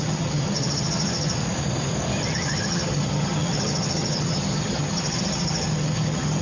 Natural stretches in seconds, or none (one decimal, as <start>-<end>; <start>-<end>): 1.4-2.3